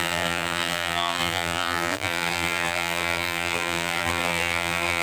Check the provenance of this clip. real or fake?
fake